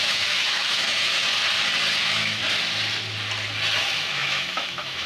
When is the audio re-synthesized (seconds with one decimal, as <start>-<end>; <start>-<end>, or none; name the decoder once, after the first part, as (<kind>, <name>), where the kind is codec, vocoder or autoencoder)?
0.0-1.3 (autoencoder, DAC-VAE); 2.0-2.4; 3.8-5.1